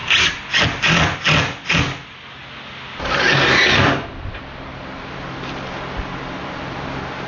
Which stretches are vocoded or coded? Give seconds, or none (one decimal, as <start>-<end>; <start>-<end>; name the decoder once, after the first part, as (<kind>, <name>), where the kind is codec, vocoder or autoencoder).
none

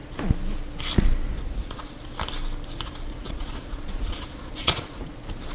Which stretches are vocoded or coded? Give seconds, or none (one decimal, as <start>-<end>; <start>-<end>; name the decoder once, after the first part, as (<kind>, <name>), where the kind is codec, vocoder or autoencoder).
1.4-2.0 (vocoder, Vocos); 3.1-5.1

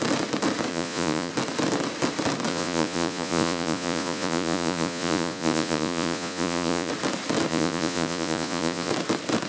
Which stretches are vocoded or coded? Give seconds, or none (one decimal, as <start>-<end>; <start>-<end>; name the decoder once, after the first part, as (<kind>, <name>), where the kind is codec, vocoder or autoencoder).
0.7-1.3 (vocoder, Vocos); 2.5-6.9; 7.5-8.9

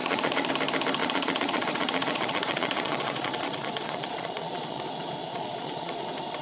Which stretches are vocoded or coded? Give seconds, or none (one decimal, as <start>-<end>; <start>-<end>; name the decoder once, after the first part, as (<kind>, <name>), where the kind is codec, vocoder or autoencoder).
0.0-0.5 (vocoder, Vocos); 1.0-4.8; 5.2-6.0